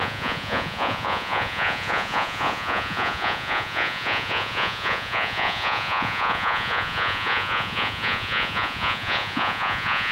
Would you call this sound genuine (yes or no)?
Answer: no